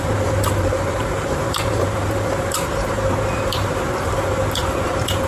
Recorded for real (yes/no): no